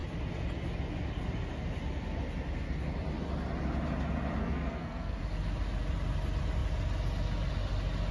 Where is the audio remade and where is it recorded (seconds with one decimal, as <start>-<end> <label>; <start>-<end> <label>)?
0.0-4.4 recorded; 4.4-5.2 remade; 5.2-8.1 recorded